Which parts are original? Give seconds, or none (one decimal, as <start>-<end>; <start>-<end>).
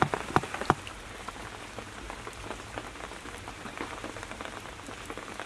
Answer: 0.0-0.9; 1.7-3.7; 4.4-5.5